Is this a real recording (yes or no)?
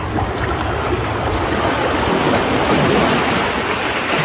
yes